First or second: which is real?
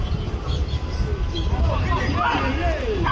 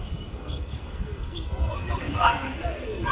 first